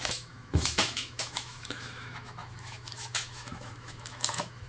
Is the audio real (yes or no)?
no